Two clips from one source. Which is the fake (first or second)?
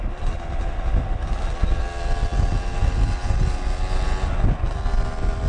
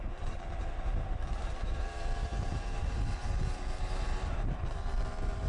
second